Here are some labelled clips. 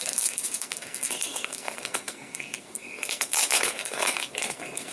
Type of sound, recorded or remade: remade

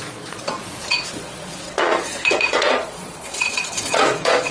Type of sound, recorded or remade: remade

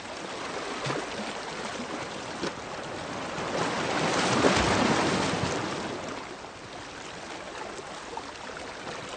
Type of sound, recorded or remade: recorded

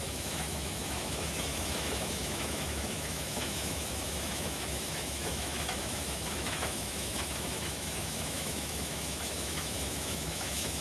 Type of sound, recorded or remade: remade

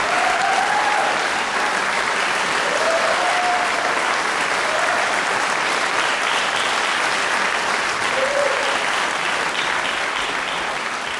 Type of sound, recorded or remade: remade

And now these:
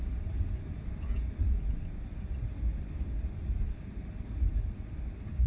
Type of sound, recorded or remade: recorded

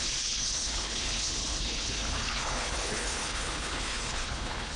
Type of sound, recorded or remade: remade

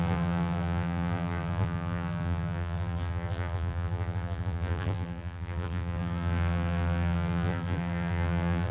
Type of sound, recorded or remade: remade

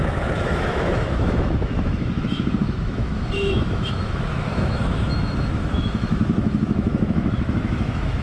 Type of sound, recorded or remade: remade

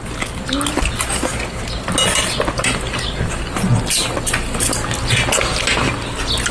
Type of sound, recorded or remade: recorded